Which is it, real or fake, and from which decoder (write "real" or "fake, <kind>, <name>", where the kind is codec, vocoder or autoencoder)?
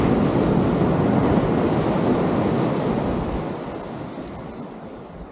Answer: real